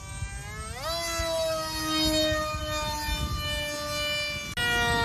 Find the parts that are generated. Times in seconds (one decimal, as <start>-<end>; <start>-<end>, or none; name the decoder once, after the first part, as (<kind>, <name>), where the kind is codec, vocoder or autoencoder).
none